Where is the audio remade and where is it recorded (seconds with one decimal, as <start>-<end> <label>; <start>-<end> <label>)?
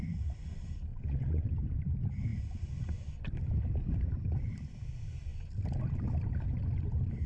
0.0-0.9 recorded; 0.9-1.5 remade; 1.5-7.3 recorded